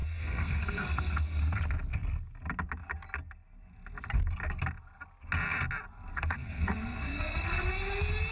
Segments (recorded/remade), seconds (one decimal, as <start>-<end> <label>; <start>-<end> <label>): 0.0-1.4 remade; 1.4-6.1 recorded; 6.1-7.7 remade; 7.7-8.3 recorded